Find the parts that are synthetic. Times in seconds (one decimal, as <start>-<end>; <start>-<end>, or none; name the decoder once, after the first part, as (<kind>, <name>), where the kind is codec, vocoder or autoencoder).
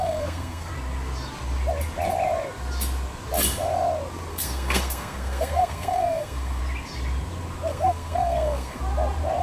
0.0-0.7 (codec, SNAC); 4.3-6.6; 7.7-8.8